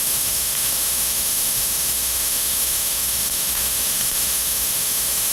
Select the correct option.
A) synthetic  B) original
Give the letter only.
A